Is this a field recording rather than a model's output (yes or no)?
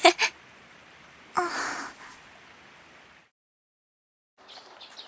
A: yes